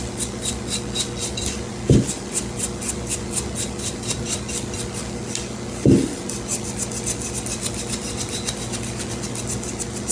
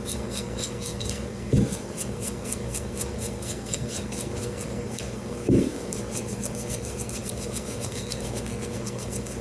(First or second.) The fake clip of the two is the second